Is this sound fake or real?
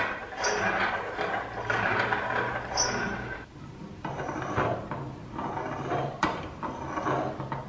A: real